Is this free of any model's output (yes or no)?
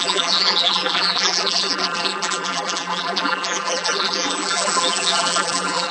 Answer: no